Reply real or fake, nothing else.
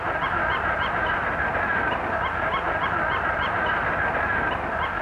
real